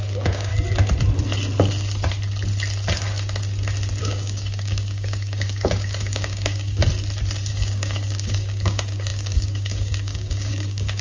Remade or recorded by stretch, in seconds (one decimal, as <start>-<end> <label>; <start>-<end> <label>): 0.0-0.5 remade; 0.5-4.0 recorded; 4.0-6.8 remade; 6.8-7.5 recorded; 7.5-11.0 remade